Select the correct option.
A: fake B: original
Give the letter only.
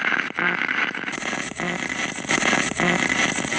B